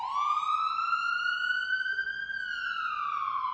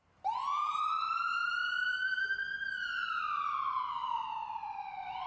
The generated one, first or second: second